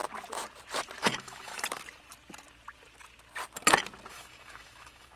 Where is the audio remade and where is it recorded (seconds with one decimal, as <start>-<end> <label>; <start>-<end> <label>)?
0.0-1.0 recorded; 1.0-1.5 remade; 1.5-4.1 recorded; 4.1-5.2 remade